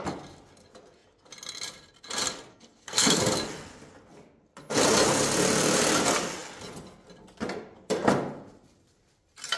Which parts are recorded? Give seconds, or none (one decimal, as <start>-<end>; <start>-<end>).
0.0-2.5; 3.2-9.6

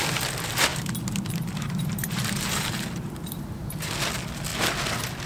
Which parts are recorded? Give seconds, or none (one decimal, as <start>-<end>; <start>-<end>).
0.0-0.7; 3.9-5.3

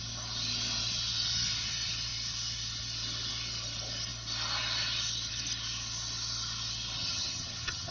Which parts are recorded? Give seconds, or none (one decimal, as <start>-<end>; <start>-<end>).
0.0-7.0

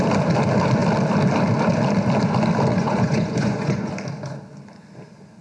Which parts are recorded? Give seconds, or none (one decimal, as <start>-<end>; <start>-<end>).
0.0-2.7; 3.9-5.4

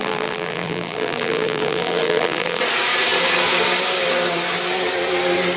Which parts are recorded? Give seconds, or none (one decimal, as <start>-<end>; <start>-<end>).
2.6-5.6

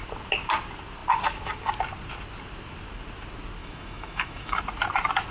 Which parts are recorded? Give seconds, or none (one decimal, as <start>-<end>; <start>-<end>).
0.0-3.6; 4.6-5.3

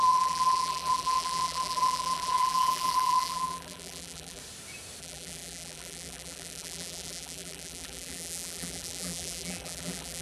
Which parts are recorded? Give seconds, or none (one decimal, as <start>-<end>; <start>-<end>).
4.4-5.0

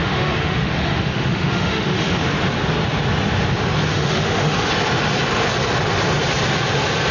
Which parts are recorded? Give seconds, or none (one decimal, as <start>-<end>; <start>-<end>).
2.2-3.9; 4.7-7.1